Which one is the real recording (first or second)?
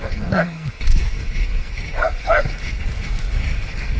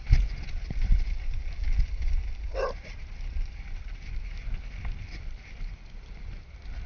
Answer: second